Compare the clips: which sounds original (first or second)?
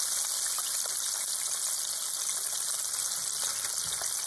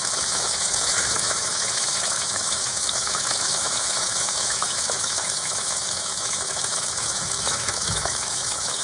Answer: first